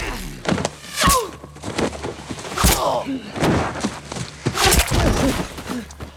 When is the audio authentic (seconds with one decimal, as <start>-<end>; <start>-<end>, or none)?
0.0-2.1; 2.7-6.2